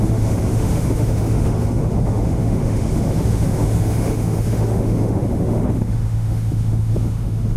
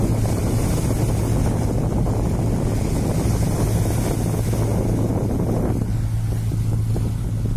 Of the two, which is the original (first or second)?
second